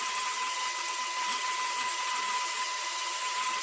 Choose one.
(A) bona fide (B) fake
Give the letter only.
B